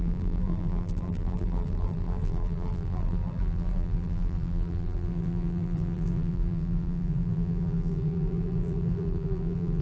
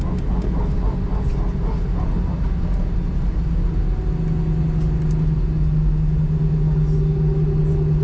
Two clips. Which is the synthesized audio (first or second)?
first